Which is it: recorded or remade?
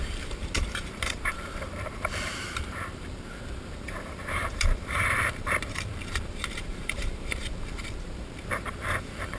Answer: remade